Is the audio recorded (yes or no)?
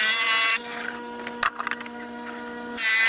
yes